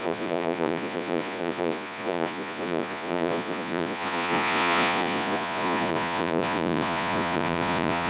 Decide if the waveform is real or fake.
fake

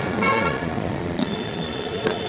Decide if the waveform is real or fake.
fake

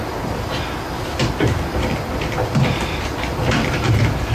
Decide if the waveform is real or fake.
fake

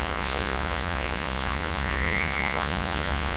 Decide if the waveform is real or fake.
fake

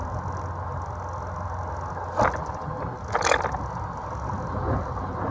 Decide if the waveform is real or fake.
real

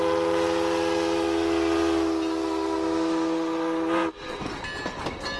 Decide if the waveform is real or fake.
real